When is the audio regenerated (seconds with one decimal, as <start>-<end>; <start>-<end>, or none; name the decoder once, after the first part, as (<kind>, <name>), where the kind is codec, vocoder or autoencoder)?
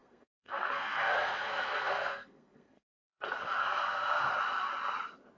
0.0-3.2 (codec, SNAC); 3.6-4.3